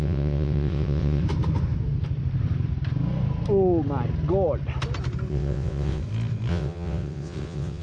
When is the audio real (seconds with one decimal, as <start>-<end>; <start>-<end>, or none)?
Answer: 1.2-5.3; 6.0-6.5